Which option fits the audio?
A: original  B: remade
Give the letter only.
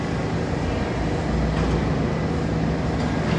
A